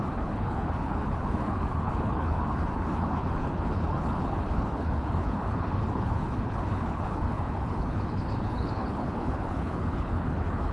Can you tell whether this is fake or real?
fake